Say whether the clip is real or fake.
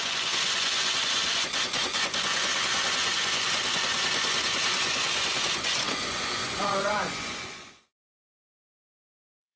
fake